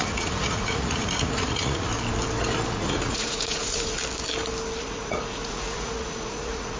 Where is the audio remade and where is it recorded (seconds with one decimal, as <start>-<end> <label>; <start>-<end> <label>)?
0.0-1.9 remade; 1.9-2.7 recorded; 2.7-4.0 remade; 4.0-4.8 recorded; 4.8-6.8 remade